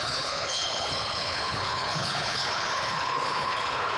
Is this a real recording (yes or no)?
no